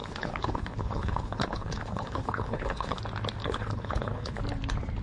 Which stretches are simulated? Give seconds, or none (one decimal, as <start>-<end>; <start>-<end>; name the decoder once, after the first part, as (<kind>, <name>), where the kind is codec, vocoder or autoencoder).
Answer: 0.0-3.0 (codec, HILCodec); 3.4-4.4